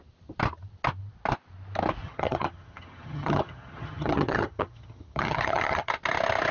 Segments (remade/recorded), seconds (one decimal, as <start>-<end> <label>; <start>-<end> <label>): 0.0-2.0 recorded; 2.0-5.9 remade; 5.9-6.5 recorded